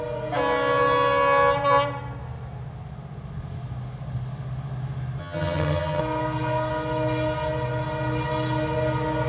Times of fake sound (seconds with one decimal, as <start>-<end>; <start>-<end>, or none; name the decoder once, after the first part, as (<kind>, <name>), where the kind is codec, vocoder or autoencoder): 5.2-6.0 (vocoder, HiFi-GAN)